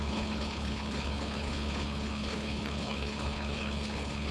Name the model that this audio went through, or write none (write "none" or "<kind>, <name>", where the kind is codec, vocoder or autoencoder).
codec, HILCodec